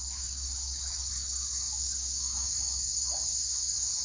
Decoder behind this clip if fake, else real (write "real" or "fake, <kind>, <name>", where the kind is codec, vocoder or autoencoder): fake, codec, DAC